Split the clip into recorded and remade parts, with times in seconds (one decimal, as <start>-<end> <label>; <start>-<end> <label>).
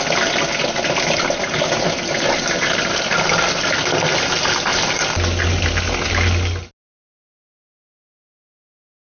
0.0-9.1 recorded